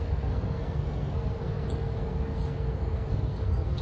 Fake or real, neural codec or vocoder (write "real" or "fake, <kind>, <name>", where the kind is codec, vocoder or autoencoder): fake, codec, SNAC